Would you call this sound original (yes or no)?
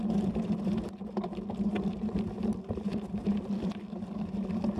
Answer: yes